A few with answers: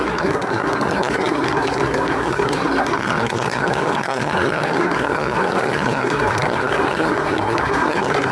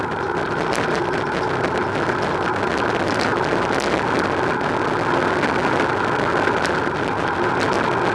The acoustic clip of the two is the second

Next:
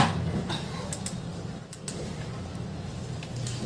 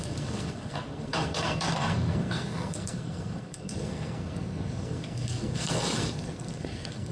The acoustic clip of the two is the first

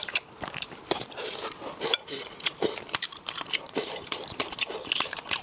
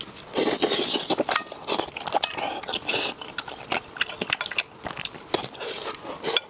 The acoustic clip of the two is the second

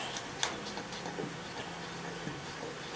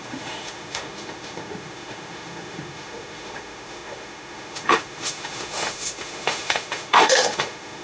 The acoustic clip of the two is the first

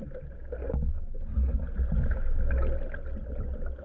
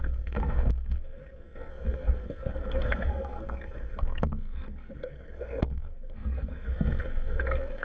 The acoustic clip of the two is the first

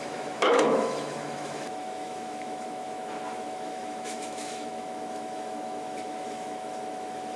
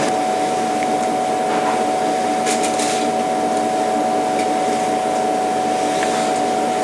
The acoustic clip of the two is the second